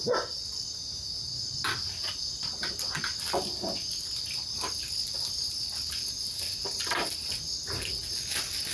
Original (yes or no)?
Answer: yes